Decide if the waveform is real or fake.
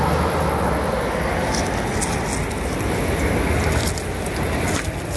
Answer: real